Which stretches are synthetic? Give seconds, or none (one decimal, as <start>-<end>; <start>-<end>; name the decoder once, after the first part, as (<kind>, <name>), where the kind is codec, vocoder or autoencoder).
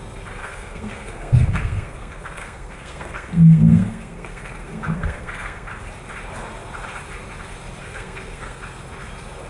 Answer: 0.4-5.7 (codec, SNAC); 7.8-8.6